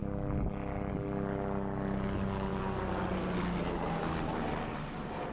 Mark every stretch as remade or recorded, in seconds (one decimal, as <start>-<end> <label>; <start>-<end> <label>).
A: 0.0-5.3 recorded